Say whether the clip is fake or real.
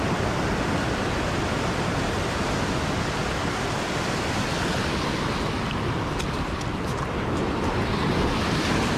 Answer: real